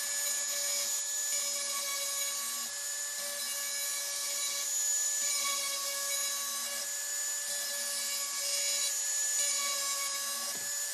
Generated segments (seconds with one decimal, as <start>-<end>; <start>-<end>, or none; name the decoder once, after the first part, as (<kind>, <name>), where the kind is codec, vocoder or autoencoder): none